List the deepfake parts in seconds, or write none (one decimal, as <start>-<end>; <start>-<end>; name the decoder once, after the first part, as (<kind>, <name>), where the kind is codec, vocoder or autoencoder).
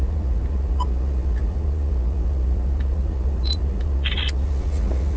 0.0-5.2 (vocoder, Vocos)